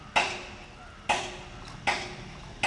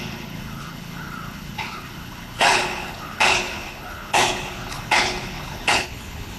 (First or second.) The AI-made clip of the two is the second